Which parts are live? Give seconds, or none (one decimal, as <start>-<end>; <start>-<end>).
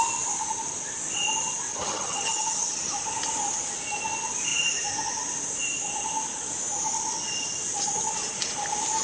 0.0-1.7; 2.9-9.0